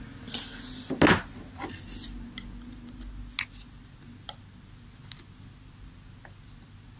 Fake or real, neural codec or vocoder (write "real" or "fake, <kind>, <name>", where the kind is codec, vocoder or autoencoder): real